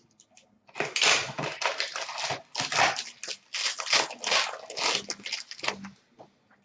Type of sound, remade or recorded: recorded